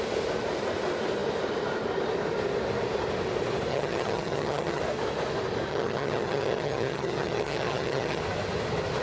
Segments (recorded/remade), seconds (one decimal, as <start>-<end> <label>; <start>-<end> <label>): 0.0-3.7 recorded; 3.7-4.8 remade; 4.8-5.7 recorded; 5.7-8.2 remade; 8.2-9.0 recorded